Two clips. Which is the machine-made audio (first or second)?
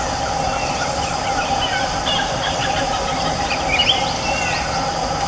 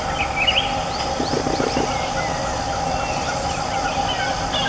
first